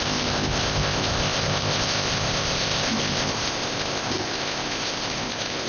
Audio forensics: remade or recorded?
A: remade